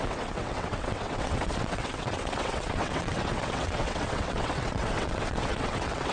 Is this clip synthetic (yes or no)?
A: yes